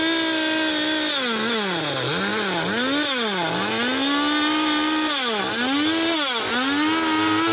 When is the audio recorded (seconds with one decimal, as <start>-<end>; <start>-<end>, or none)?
0.0-7.5